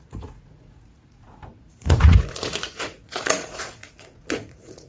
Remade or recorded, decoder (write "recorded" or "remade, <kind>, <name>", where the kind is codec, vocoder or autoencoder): remade, vocoder, Vocos